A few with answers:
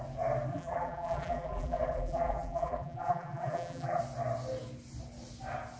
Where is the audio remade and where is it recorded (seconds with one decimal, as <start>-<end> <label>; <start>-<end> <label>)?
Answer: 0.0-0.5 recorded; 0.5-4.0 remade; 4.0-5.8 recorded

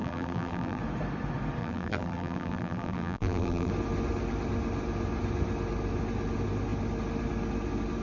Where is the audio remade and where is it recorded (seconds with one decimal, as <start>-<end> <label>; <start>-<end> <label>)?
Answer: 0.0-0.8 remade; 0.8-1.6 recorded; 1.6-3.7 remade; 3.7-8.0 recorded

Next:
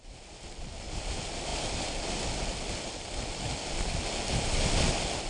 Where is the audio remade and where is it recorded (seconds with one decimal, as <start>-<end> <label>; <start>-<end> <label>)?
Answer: 0.0-5.3 recorded

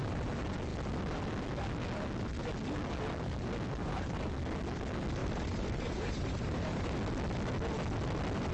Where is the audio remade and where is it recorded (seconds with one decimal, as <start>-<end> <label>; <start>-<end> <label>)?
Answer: 0.0-3.8 recorded; 3.8-4.3 remade; 4.3-5.2 recorded; 5.2-6.9 remade; 6.9-8.5 recorded

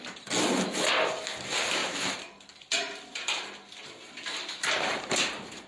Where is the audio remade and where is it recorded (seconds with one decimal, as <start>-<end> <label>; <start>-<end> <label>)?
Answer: 0.0-1.8 recorded; 1.8-5.1 remade; 5.1-5.7 recorded